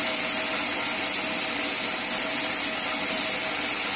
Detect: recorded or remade recorded